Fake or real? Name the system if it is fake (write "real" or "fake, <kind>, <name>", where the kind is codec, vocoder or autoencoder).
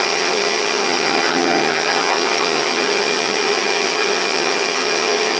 fake, vocoder, HiFi-GAN